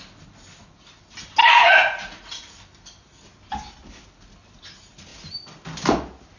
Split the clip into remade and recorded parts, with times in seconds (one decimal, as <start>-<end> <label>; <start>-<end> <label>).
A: 0.0-1.4 recorded; 1.4-2.6 remade; 2.6-6.4 recorded